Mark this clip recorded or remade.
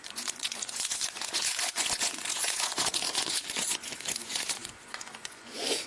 remade